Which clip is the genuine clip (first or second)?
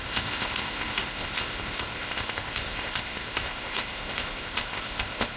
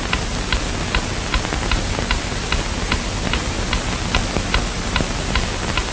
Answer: second